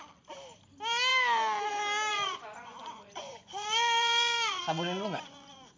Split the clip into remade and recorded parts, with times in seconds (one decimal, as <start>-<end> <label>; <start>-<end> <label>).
0.0-2.1 recorded; 2.1-5.8 remade